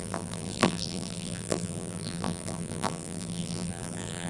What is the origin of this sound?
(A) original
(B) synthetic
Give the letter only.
B